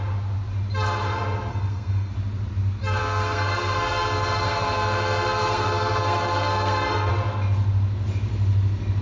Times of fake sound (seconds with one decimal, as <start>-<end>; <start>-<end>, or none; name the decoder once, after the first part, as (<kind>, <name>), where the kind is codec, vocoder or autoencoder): 1.5-2.1 (codec, SNAC); 3.0-7.1